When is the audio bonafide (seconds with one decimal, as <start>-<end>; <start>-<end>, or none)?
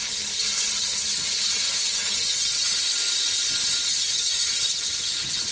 2.7-3.9